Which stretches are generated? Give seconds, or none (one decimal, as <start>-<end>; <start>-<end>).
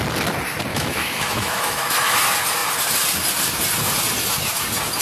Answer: 0.7-2.2